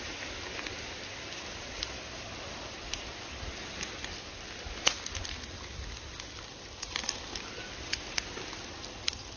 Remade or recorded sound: recorded